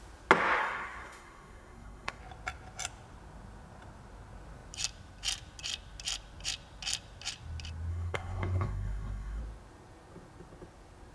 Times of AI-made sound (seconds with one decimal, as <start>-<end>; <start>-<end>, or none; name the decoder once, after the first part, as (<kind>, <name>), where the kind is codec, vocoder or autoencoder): 0.6-2.2 (codec, SNAC); 7.9-9.4